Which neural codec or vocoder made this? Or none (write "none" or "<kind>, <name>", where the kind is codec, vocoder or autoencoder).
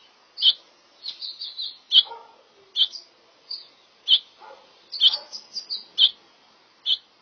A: none